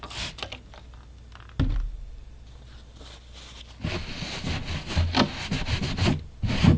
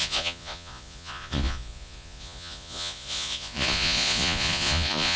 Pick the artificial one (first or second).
second